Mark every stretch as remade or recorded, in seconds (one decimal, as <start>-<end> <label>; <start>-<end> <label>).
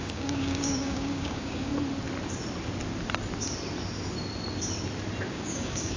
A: 0.0-1.7 remade; 1.7-5.3 recorded; 5.3-6.0 remade